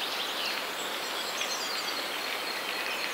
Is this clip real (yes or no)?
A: no